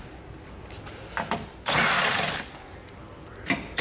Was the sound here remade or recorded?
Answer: recorded